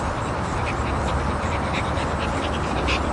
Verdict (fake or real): real